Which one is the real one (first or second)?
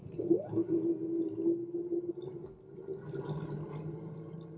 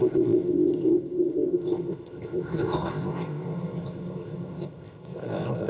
first